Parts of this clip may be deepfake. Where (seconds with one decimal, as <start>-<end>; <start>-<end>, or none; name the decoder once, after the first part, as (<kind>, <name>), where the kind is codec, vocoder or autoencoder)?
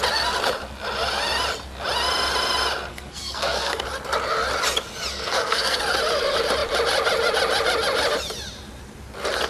2.9-3.8 (codec, SNAC); 5.1-5.8